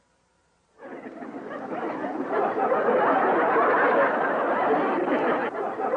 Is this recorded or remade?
recorded